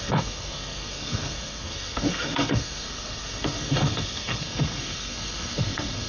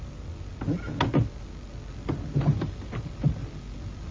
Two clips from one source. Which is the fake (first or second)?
first